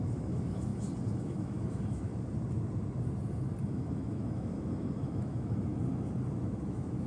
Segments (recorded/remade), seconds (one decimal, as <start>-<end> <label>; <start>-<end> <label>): 0.0-0.7 remade; 0.7-1.2 recorded; 1.2-2.1 remade; 2.1-3.7 recorded; 3.7-5.7 remade; 5.7-6.4 recorded; 6.4-7.1 remade